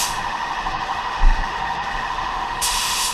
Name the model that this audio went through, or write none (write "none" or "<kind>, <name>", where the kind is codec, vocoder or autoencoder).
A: autoencoder, DAC-VAE